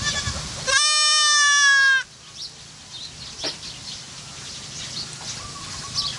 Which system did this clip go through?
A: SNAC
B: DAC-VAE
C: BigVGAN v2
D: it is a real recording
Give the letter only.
D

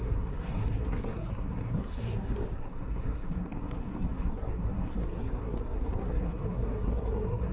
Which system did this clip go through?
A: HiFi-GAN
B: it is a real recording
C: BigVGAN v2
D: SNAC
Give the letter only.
D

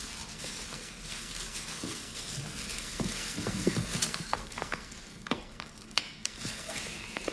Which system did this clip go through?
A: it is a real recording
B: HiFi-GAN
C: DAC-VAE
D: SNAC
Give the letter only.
D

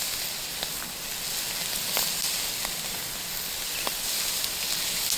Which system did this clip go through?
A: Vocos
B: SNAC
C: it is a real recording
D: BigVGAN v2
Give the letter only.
C